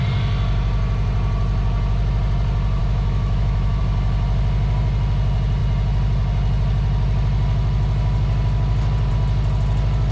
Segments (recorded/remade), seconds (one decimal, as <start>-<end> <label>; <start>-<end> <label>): 0.0-2.8 recorded; 2.8-3.8 remade; 3.8-10.1 recorded